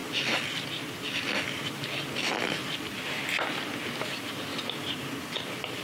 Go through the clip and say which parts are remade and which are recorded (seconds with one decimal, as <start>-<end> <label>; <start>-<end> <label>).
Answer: 0.0-2.6 recorded; 2.6-3.1 remade; 3.1-5.8 recorded